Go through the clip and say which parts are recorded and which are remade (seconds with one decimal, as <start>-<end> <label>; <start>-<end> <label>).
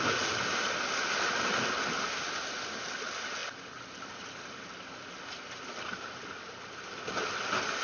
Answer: 0.0-7.8 recorded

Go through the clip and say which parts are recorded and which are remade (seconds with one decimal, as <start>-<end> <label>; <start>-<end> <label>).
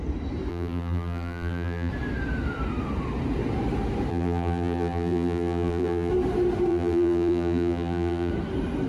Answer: 0.0-0.5 recorded; 0.5-1.9 remade; 1.9-4.1 recorded; 4.1-6.1 remade; 6.1-6.7 recorded; 6.7-8.3 remade; 8.3-8.9 recorded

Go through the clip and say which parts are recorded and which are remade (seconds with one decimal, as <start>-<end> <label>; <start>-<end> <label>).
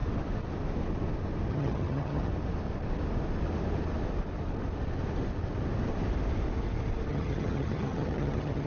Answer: 0.0-1.5 recorded; 1.5-2.3 remade; 2.3-7.1 recorded; 7.1-8.7 remade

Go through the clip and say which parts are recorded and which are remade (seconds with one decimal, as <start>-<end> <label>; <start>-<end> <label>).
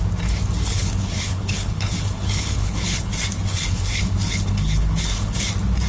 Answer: 0.0-0.7 recorded; 0.7-3.1 remade; 3.1-3.5 recorded; 3.5-5.5 remade; 5.5-5.9 recorded